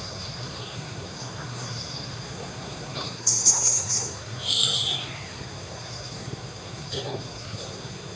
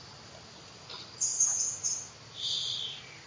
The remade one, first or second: first